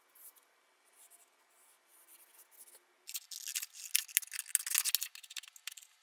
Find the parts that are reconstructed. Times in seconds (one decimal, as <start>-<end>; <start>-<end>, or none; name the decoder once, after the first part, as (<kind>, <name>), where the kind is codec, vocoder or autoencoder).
none